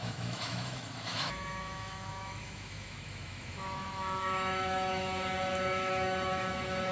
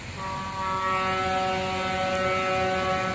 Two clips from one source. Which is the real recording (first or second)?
second